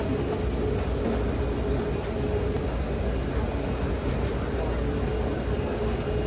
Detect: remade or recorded recorded